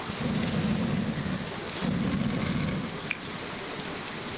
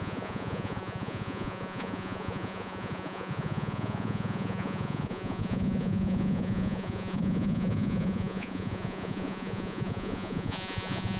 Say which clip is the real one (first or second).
first